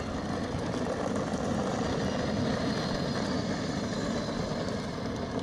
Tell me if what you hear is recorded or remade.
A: recorded